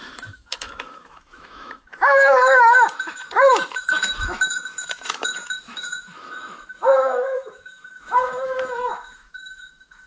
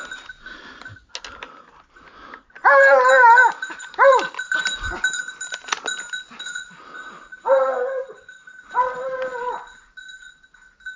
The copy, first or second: first